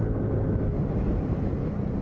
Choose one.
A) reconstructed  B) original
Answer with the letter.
B